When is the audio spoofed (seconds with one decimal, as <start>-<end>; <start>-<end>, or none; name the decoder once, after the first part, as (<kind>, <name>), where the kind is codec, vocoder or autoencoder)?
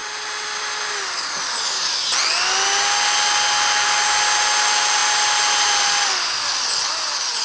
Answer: none